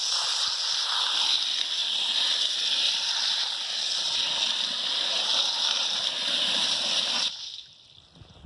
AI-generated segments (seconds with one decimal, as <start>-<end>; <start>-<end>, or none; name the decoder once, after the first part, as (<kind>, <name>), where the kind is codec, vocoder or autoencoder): none